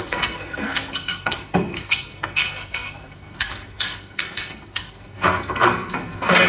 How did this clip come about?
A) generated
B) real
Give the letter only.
A